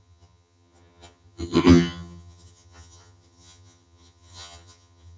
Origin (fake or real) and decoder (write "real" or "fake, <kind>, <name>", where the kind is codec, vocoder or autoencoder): fake, vocoder, HiFi-GAN